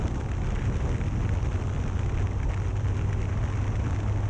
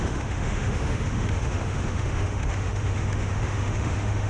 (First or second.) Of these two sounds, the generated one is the second